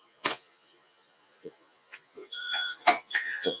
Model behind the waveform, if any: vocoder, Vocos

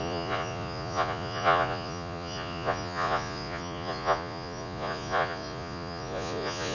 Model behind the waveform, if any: vocoder, Vocos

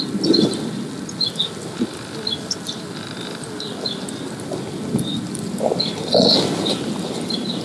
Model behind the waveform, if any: none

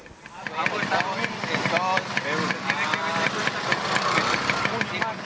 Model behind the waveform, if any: none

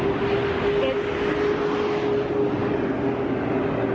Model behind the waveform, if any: none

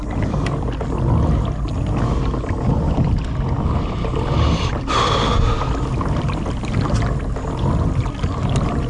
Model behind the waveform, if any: none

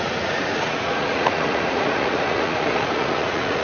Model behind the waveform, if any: vocoder, Vocos